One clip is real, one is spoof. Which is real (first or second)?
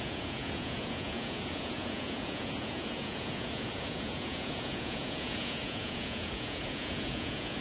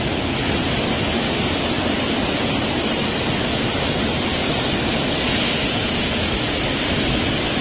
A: second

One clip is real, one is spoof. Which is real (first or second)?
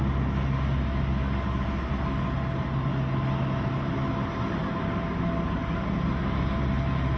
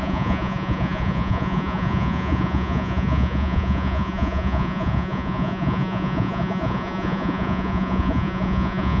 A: first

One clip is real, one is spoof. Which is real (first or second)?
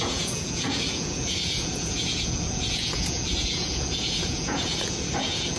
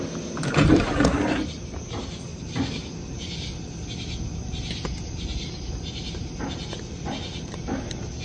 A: second